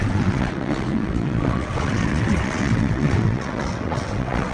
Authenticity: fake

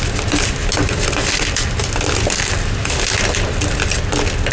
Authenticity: real